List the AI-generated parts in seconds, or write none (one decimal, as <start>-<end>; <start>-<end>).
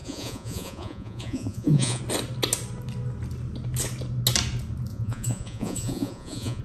0.0-2.0; 4.9-6.6